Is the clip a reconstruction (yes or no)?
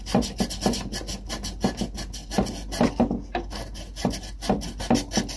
no